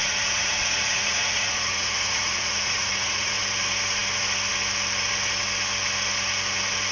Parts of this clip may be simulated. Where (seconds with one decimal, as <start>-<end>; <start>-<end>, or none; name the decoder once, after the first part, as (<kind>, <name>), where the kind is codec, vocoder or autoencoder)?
0.0-3.3 (vocoder, Vocos)